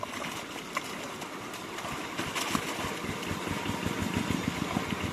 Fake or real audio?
real